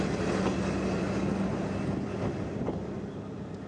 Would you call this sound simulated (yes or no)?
no